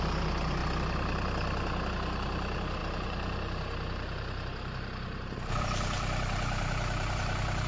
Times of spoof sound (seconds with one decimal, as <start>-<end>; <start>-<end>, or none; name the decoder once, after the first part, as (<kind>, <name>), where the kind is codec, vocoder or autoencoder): 0.0-0.6 (vocoder, BigVGAN v2); 1.9-7.7